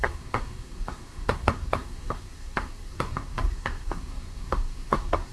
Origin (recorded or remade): remade